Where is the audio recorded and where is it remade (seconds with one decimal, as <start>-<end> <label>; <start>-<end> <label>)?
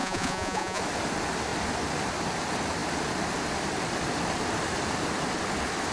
0.0-0.8 remade; 0.8-5.9 recorded